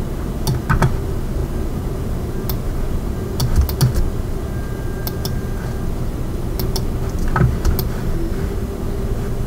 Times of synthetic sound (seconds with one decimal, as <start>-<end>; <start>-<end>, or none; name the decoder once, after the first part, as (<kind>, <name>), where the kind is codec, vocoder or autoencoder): none